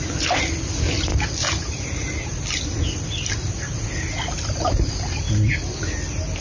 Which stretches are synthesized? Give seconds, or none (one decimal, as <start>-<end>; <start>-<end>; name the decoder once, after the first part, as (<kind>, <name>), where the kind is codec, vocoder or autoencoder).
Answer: none